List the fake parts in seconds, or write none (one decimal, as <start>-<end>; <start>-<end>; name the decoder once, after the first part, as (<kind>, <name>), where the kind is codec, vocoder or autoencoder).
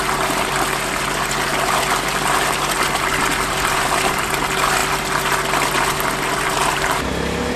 none